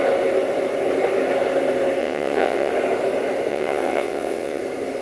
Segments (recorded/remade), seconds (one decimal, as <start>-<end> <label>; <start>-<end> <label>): 0.0-2.0 recorded; 2.0-2.7 remade; 2.7-3.5 recorded; 3.5-4.6 remade; 4.6-5.0 recorded